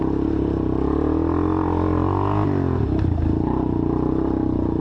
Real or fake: real